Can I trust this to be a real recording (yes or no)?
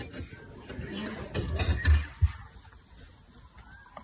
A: yes